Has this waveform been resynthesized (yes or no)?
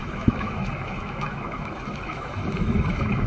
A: yes